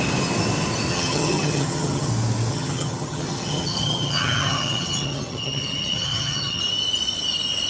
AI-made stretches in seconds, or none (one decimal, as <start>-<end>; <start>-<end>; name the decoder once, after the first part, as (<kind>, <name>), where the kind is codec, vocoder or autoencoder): 0.9-2.1 (vocoder, HiFi-GAN); 2.5-6.6